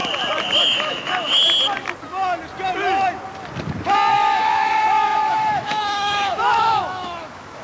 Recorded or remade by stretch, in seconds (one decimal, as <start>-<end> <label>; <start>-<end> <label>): 0.0-0.6 recorded; 0.6-1.4 remade; 1.4-4.1 recorded; 4.1-7.6 remade